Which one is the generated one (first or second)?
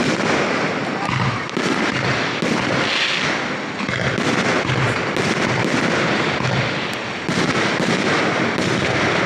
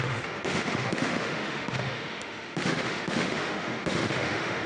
second